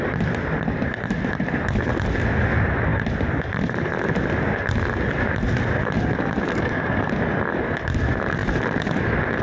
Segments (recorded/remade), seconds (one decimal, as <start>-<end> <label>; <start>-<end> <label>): 0.0-6.5 recorded; 6.5-7.1 remade; 7.1-9.4 recorded